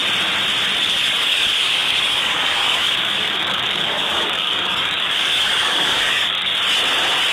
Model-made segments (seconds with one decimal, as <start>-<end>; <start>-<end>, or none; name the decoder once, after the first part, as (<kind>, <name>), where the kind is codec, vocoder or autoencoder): 0.8-6.5 (codec, DAC)